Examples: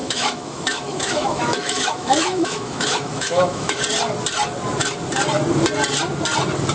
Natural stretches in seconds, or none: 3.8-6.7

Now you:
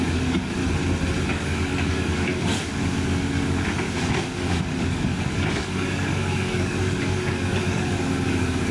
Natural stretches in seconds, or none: 0.6-1.3

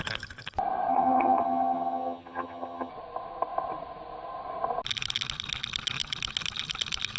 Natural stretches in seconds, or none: 0.0-0.9; 2.9-7.2

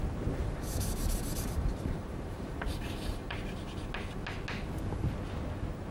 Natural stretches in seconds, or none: 0.0-0.4; 3.9-5.9

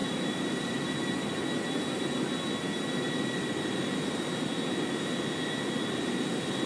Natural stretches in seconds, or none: 0.0-6.7

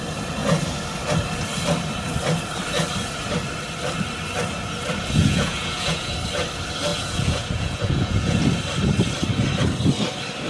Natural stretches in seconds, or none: 0.0-5.2; 6.1-6.9; 8.4-10.5

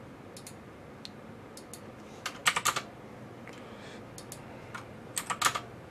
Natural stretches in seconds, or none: 0.0-5.9

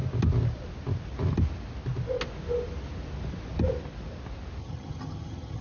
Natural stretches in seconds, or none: 0.0-4.6